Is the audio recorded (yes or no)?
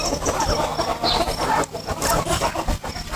yes